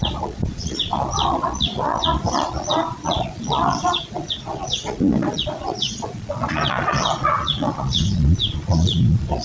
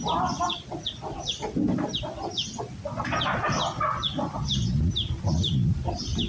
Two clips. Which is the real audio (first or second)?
second